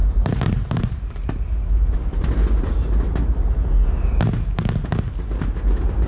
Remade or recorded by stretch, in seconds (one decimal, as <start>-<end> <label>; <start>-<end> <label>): 0.0-3.7 remade; 3.7-6.1 recorded